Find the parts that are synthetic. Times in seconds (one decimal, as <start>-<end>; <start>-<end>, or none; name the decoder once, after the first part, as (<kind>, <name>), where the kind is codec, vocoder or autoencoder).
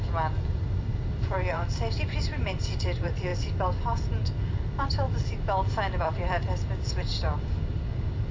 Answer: 0.0-3.3 (vocoder, BigVGAN v2); 6.0-8.3